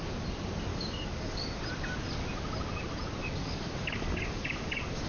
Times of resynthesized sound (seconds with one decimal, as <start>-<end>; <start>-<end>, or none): 0.7-1.6; 3.2-5.1